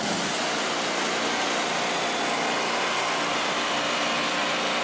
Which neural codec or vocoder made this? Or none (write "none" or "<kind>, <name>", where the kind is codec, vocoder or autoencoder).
none